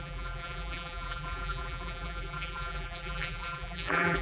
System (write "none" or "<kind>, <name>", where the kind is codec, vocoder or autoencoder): vocoder, BigVGAN v2